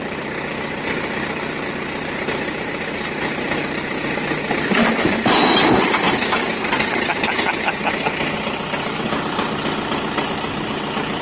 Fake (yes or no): yes